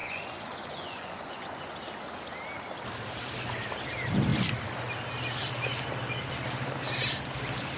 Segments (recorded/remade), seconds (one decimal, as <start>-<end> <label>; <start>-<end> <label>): 0.0-1.7 remade; 1.7-7.8 recorded